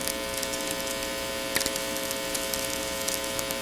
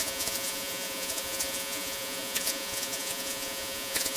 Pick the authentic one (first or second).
first